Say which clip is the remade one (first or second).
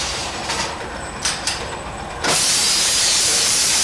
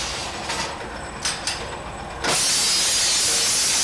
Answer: first